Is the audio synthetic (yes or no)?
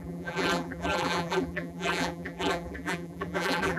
yes